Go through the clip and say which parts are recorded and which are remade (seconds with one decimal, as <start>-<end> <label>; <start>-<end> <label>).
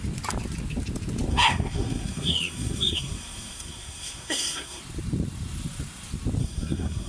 0.0-1.3 recorded; 1.3-4.8 remade; 4.8-6.4 recorded; 6.4-7.1 remade